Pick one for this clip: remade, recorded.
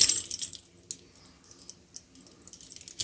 recorded